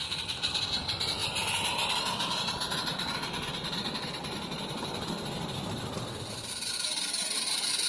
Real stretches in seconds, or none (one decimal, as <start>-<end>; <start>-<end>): 0.0-4.2; 5.0-7.9

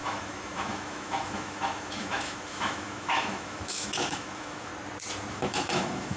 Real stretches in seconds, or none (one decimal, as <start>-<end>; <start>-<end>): 4.7-5.3

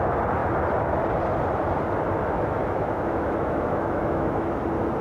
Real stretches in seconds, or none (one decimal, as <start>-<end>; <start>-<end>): 0.0-2.6; 4.6-5.0

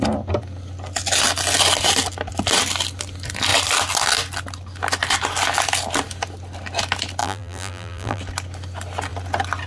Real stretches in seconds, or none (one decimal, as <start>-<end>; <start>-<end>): 0.0-7.2; 8.2-9.7

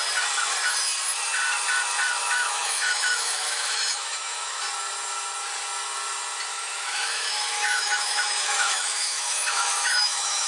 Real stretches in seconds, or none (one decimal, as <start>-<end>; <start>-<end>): 0.0-2.2; 4.6-6.5

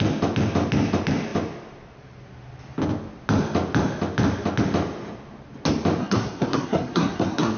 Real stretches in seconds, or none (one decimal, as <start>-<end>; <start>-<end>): 0.0-6.0

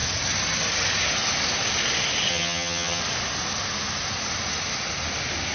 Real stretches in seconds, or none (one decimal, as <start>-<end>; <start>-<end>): 0.0-2.3; 3.0-5.5

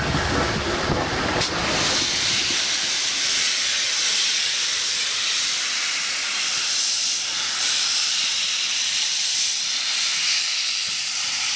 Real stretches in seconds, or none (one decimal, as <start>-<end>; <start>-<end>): 1.6-4.4